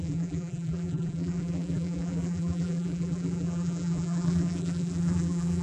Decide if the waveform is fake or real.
fake